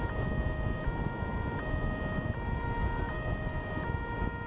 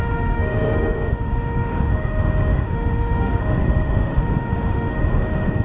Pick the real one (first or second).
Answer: first